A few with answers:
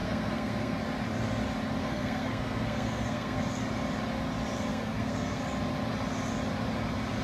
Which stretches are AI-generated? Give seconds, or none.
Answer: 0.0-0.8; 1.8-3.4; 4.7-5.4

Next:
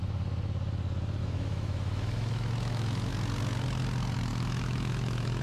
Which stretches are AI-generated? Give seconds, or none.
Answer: 1.2-3.1; 4.3-5.4